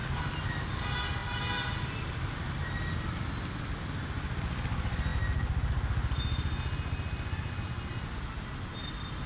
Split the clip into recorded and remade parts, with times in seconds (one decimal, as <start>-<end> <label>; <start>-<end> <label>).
0.0-9.3 recorded